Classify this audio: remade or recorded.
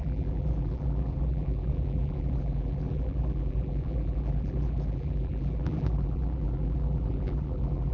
remade